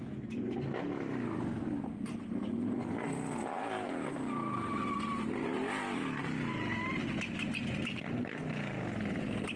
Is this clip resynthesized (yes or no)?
no